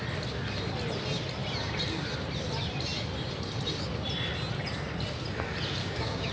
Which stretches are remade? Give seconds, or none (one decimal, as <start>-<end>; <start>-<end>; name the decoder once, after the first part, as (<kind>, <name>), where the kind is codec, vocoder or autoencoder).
5.8-6.3 (codec, DAC)

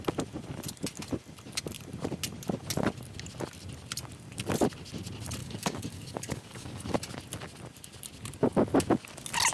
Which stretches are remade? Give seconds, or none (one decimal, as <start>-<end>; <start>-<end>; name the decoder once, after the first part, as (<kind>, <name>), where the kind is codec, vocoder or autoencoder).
5.4-6.9 (codec, DAC)